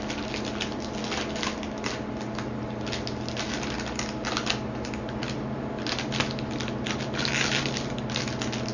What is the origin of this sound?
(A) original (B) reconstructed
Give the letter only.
A